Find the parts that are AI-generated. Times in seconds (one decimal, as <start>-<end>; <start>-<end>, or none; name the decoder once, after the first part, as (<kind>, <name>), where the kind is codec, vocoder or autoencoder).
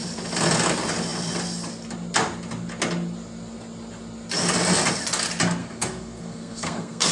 5.6-7.1 (codec, SNAC)